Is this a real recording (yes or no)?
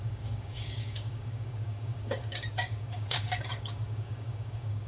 no